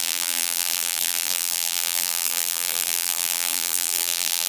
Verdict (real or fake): fake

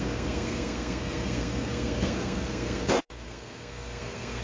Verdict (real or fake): fake